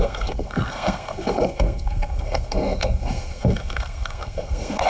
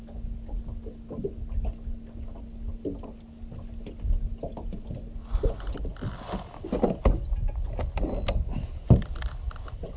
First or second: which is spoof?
first